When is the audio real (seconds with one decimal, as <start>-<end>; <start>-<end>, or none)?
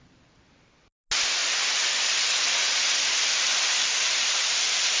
0.0-5.0